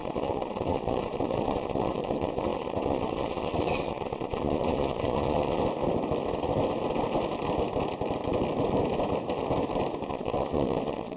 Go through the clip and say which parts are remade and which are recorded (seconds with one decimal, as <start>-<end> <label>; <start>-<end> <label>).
0.0-5.6 remade; 5.6-10.1 recorded; 10.1-11.2 remade